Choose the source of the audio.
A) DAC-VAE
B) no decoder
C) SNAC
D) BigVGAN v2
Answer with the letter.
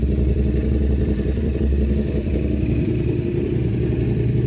D